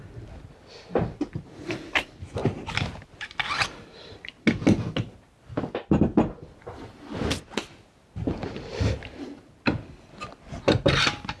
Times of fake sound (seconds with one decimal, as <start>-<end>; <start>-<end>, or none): none

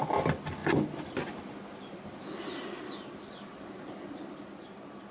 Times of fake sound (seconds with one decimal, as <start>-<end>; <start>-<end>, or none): none

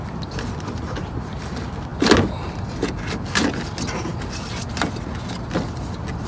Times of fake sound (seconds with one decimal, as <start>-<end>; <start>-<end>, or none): none